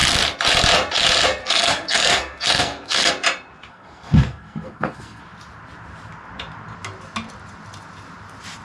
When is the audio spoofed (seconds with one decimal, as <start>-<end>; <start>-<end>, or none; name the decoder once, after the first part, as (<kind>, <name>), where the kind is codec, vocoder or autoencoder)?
1.4-3.1 (codec, SNAC); 3.7-5.2